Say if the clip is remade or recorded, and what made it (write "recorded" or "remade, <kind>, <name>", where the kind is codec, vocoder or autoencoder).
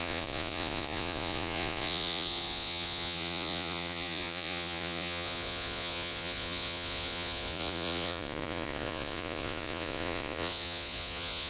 remade, vocoder, Vocos